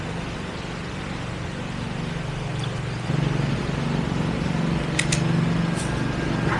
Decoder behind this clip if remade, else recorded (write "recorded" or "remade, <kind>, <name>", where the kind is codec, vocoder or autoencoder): recorded